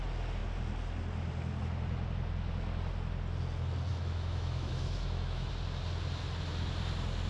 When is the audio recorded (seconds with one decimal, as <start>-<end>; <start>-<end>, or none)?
0.0-3.9; 5.5-7.3